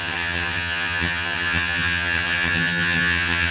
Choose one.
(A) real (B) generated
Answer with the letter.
B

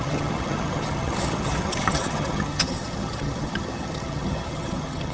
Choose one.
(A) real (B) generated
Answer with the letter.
B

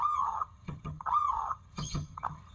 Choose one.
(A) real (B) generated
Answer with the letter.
B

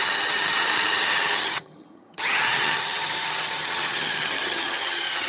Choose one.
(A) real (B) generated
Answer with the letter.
B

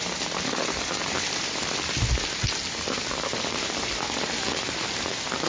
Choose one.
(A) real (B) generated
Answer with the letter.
A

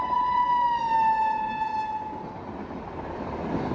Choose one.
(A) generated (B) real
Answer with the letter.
B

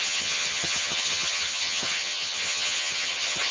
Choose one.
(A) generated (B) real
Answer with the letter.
A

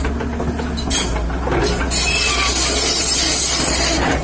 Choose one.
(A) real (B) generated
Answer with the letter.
A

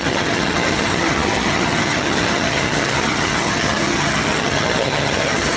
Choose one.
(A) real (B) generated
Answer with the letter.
B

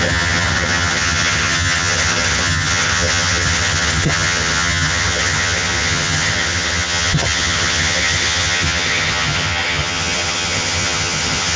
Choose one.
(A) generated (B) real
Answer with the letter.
A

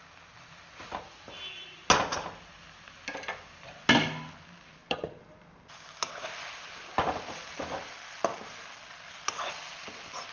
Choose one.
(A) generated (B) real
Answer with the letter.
B